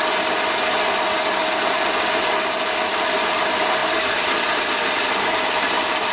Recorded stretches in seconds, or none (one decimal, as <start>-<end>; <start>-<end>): 0.0-3.8; 5.5-6.1